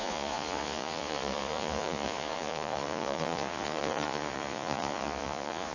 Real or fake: fake